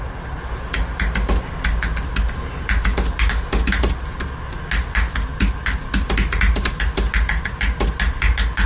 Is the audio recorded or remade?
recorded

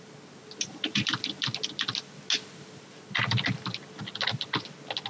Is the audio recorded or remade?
recorded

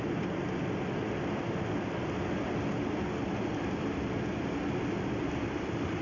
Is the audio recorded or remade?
recorded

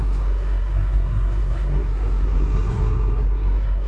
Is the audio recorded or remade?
remade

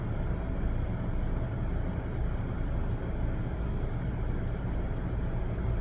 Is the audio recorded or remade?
recorded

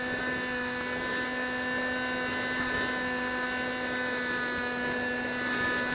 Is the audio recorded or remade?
recorded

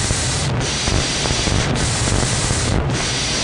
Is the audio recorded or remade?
recorded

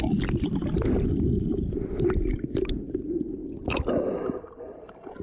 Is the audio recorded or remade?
recorded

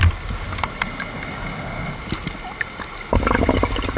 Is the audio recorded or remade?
recorded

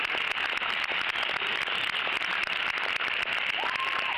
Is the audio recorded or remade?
recorded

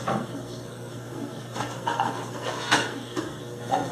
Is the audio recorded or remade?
remade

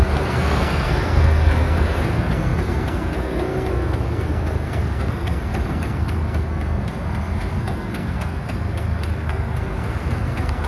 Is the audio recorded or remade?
remade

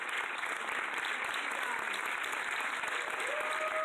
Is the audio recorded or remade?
recorded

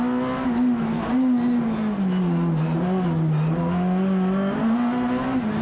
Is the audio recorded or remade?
recorded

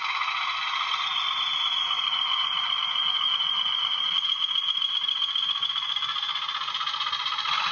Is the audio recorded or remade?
recorded